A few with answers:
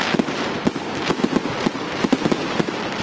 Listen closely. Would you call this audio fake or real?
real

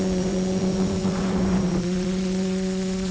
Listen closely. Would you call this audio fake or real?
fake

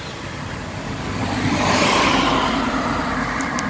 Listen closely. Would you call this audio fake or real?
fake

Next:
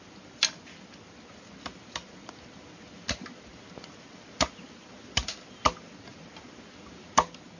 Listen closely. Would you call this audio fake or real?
real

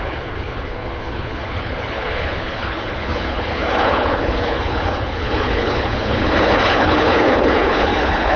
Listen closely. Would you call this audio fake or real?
fake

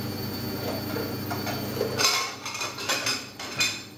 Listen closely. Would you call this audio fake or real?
real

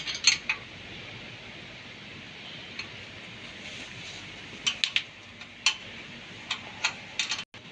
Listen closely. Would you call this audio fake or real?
real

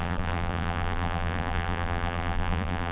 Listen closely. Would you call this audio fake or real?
fake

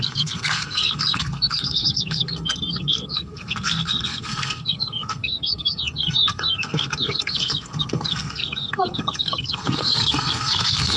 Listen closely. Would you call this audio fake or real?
fake